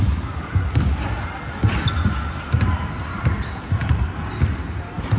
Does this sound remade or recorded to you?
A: recorded